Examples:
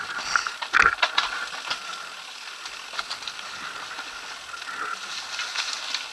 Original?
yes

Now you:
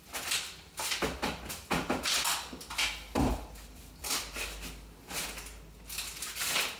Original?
yes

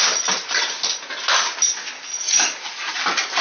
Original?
yes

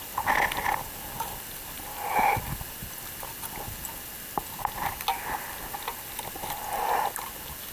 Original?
yes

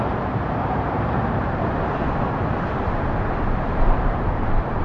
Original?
no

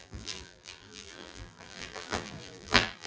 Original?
no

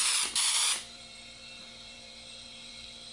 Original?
no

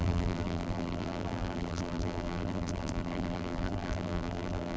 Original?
no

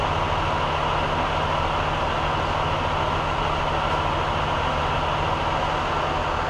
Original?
yes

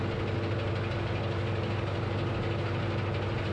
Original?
yes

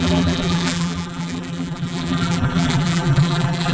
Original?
no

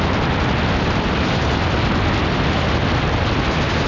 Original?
no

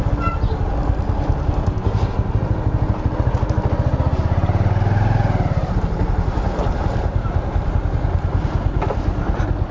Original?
yes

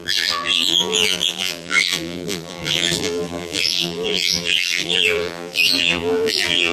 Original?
no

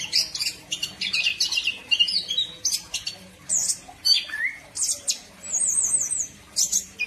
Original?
no